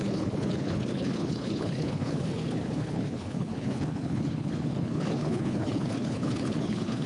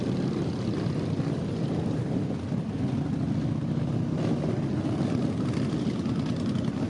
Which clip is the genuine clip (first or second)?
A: second